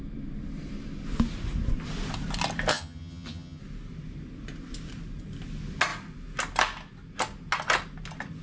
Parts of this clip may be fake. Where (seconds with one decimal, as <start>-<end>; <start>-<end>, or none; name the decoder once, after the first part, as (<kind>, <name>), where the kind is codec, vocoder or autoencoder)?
2.7-3.6 (vocoder, HiFi-GAN)